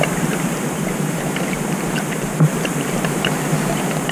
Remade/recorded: remade